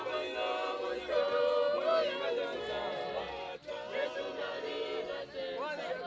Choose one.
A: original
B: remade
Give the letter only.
A